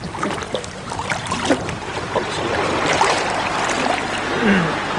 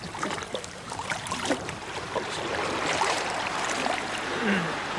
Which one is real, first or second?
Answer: first